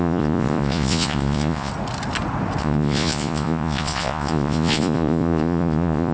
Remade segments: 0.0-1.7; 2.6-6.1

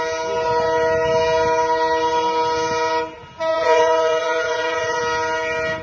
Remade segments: 3.5-5.0

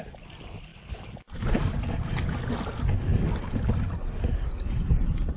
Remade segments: none

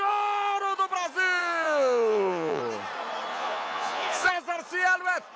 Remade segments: 1.4-2.6; 3.3-4.3

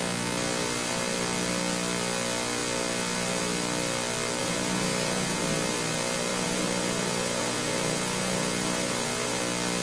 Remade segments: 4.4-5.4; 6.3-9.4

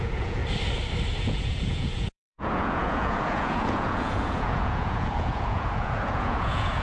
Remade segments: 0.0-0.4; 1.2-6.8